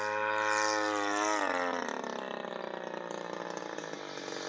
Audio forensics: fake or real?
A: real